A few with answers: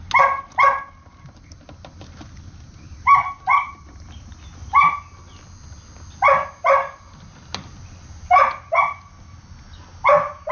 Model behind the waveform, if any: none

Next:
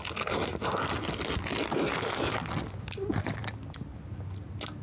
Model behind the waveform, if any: none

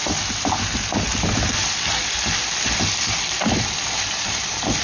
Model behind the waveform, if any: vocoder, BigVGAN v2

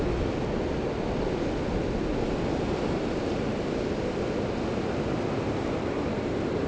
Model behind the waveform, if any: none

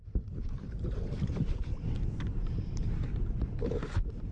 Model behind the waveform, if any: vocoder, BigVGAN v2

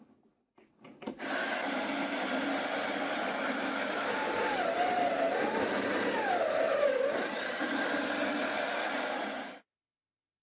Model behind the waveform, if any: none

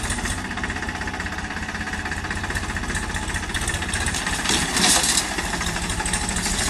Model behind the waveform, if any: none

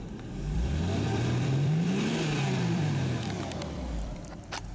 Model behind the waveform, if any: vocoder, BigVGAN v2